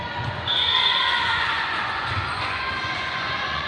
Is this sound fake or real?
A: fake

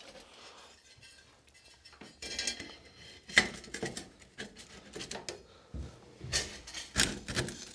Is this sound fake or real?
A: real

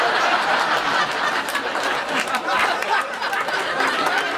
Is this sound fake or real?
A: real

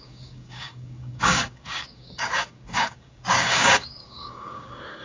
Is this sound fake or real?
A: fake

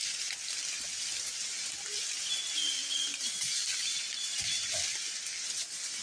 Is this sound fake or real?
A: real